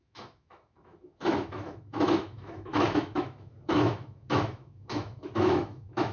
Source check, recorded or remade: remade